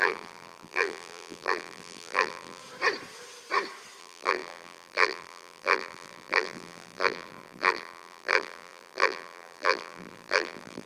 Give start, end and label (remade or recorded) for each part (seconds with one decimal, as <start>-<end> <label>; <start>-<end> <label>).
0.0-2.6 remade; 2.6-4.0 recorded; 4.0-10.9 remade